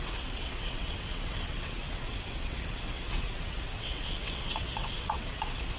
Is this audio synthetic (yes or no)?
yes